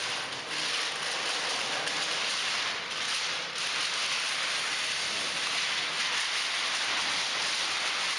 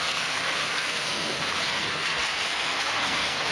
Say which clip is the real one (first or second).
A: first